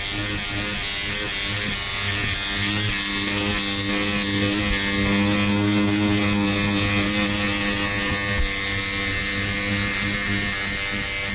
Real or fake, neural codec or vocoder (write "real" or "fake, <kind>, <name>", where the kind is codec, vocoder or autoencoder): real